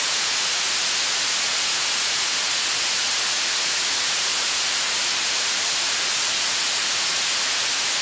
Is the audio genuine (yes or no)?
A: no